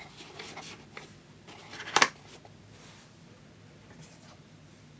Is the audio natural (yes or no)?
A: yes